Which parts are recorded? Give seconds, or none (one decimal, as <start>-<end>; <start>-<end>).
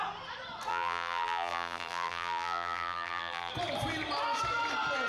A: 0.0-0.7; 3.5-5.1